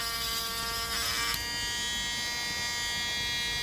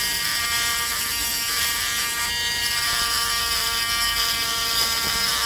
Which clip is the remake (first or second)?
second